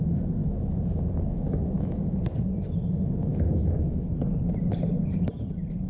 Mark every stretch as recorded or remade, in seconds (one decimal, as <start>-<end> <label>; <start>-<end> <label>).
0.0-0.4 recorded; 0.4-2.2 remade; 2.2-3.3 recorded; 3.3-4.2 remade; 4.2-5.9 recorded